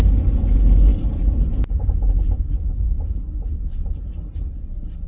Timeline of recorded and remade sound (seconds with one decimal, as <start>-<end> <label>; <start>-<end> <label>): 0.0-5.1 recorded